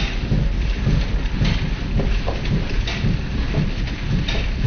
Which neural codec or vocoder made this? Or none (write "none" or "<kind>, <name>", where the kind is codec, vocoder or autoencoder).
none